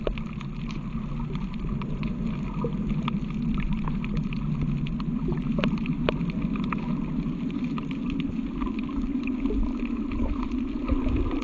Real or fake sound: real